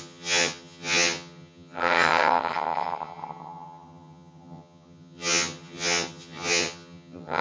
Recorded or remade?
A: remade